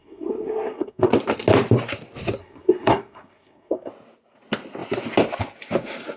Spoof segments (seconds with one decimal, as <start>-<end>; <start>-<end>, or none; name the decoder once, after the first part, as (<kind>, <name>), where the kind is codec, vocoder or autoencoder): 0.0-1.1 (codec, SNAC); 2.4-3.9

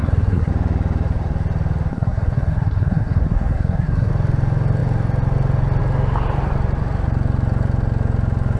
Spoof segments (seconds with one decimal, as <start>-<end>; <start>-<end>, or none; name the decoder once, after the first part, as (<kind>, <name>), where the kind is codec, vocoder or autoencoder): 0.0-0.5 (codec, SNAC); 1.9-4.1